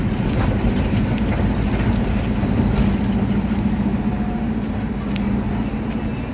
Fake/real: real